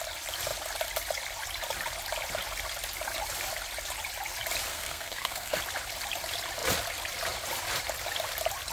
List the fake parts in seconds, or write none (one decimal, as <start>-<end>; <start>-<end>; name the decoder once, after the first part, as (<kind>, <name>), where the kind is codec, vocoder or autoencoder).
4.7-5.6 (codec, SNAC)